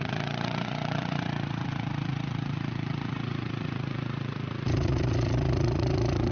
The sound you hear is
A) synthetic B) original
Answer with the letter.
A